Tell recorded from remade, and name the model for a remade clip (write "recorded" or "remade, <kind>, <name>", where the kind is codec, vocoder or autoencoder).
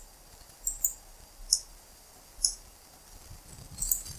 recorded